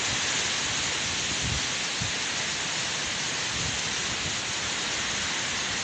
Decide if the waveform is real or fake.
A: real